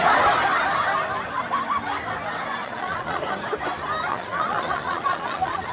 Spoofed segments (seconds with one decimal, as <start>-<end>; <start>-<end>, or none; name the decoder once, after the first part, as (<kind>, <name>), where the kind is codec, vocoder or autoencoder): 2.6-3.2 (vocoder, Vocos); 4.1-5.7